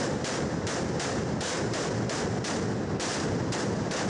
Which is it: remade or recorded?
recorded